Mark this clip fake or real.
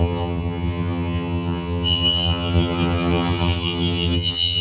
fake